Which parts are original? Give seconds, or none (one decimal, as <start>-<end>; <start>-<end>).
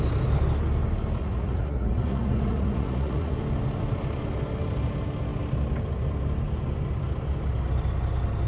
0.0-1.2; 3.4-8.5